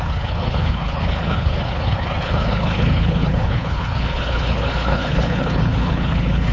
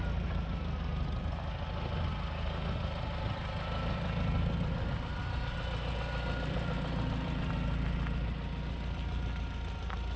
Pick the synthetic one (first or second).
first